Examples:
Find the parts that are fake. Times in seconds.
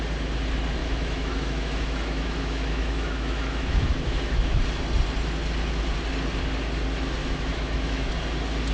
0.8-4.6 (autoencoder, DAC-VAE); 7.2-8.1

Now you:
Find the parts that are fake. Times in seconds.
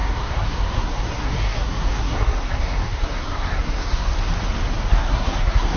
0.0-4.1 (codec, SNAC); 4.9-5.8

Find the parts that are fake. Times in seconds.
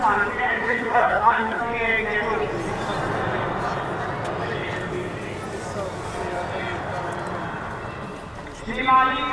0.5-1.6 (codec, SNAC)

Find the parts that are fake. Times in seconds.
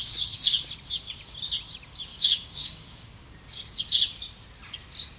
0.0-0.7 (codec, DAC); 2.1-3.1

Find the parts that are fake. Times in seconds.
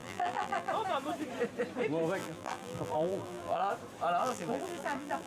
0.0-0.7 (vocoder, BigVGAN v2); 2.2-3.7; 4.2-5.3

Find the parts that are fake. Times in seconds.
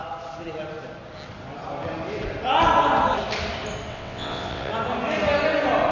3.9-4.7 (vocoder, WaveNeXt)